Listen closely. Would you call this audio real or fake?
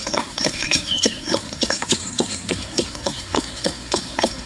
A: fake